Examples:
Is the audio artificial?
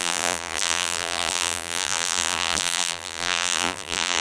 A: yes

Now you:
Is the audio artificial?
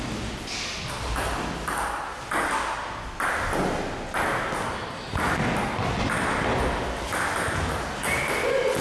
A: no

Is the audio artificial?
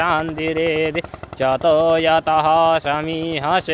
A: yes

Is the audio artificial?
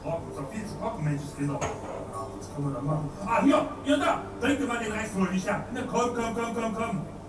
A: no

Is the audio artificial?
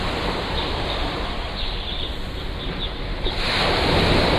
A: no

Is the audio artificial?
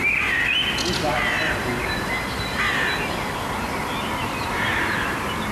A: no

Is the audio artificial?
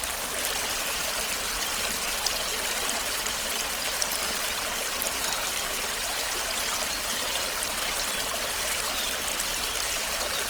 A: yes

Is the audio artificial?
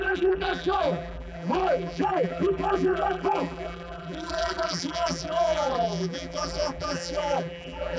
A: yes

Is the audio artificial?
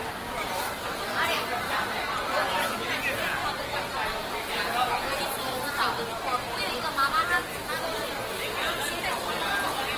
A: no